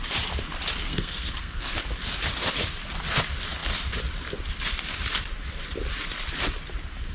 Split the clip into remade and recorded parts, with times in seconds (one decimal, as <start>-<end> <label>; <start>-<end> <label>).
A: 0.0-0.8 recorded; 0.8-1.7 remade; 1.7-7.1 recorded